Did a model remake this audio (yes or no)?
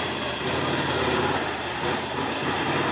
yes